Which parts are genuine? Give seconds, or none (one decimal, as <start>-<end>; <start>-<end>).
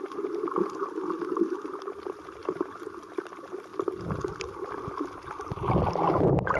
0.0-6.6